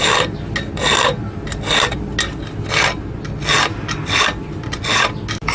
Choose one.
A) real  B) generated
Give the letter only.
A